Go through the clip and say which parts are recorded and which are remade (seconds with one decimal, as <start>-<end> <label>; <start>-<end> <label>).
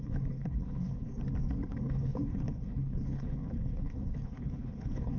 0.0-1.1 remade; 1.1-1.7 recorded; 1.7-5.2 remade